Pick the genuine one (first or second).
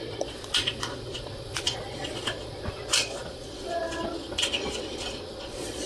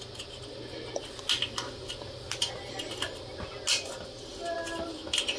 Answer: second